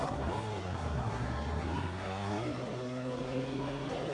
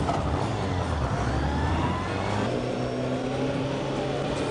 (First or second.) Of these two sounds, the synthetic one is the first